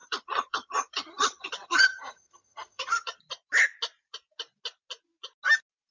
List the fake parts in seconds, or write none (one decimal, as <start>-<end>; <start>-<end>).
0.0-3.2